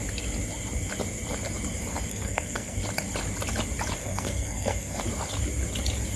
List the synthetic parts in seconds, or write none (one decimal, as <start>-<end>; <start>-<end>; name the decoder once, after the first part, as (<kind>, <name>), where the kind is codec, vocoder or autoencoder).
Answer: 2.1-2.8 (codec, SNAC); 4.0-5.0